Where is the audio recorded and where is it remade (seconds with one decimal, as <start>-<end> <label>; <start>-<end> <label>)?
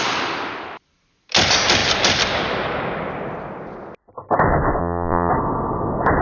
0.0-4.8 recorded; 4.8-5.3 remade; 5.3-6.2 recorded